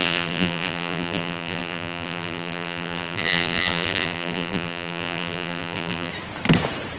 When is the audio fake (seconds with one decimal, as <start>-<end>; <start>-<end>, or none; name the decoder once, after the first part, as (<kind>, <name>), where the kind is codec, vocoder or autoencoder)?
0.0-6.1 (vocoder, BigVGAN v2)